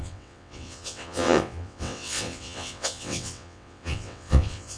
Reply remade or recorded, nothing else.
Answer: remade